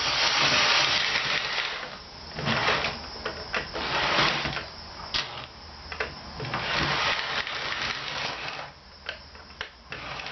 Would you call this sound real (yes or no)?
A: yes